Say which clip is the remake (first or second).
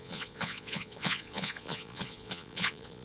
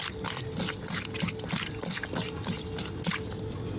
first